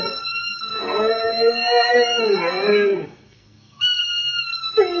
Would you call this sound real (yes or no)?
no